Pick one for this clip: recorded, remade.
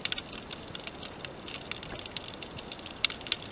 recorded